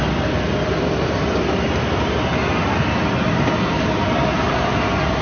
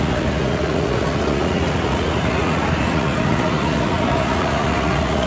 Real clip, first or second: first